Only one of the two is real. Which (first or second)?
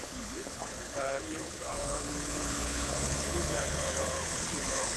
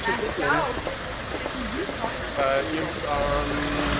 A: second